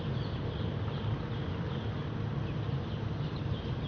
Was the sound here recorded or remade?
recorded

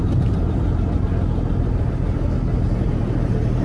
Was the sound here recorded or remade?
remade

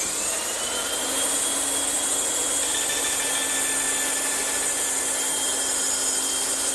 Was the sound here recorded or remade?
recorded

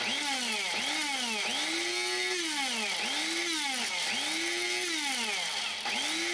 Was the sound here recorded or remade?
recorded